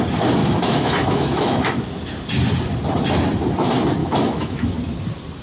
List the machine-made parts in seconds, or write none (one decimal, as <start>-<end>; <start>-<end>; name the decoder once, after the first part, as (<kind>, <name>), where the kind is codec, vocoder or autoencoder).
0.4-1.8 (autoencoder, DAC-VAE); 4.0-4.7